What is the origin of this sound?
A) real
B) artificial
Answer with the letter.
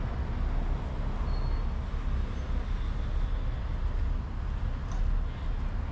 A